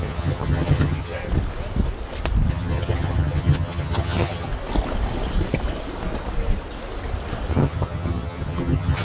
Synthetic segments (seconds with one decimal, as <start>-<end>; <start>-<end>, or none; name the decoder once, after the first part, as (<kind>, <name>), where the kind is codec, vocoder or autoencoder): 0.0-1.2 (vocoder, HiFi-GAN); 2.5-4.5; 7.5-9.0